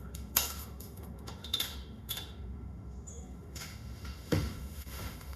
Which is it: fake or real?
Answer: fake